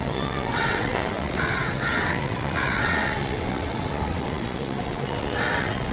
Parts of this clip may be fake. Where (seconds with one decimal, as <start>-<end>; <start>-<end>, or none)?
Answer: 0.0-5.9